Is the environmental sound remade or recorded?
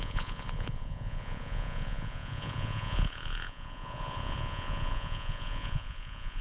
remade